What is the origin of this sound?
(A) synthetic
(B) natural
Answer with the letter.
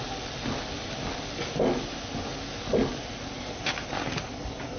B